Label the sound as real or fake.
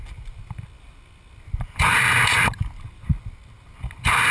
real